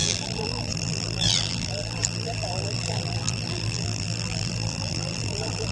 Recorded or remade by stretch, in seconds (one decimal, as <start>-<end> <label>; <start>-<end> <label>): 0.0-5.7 remade

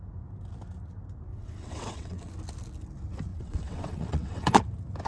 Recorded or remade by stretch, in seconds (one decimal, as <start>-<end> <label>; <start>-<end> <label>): 0.0-1.3 recorded; 1.3-2.3 remade; 2.3-3.3 recorded; 3.3-4.6 remade; 4.6-5.1 recorded

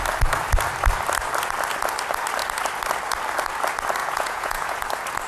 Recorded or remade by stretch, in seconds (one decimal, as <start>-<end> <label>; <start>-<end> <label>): 0.0-4.0 recorded; 4.0-4.8 remade; 4.8-5.3 recorded

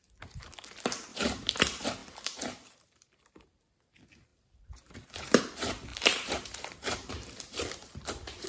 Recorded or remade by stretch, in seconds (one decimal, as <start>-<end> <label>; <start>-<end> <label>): 0.0-4.3 recorded; 4.3-5.4 remade; 5.4-5.9 recorded; 5.9-8.5 remade